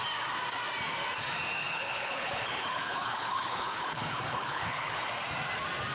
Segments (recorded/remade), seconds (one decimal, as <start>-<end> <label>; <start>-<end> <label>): 0.0-1.6 recorded; 1.6-5.1 remade; 5.1-5.9 recorded